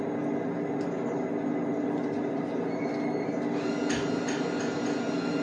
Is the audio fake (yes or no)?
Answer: no